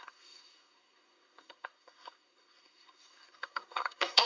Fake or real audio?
fake